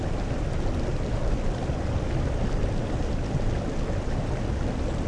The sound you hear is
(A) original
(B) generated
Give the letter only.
A